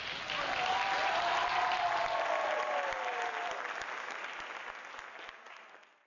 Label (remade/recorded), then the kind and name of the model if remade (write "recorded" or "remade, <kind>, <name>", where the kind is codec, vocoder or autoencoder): recorded